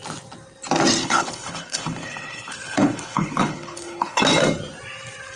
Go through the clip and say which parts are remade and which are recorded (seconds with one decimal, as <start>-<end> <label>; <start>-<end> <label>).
0.0-1.0 recorded; 1.0-4.2 remade; 4.2-5.4 recorded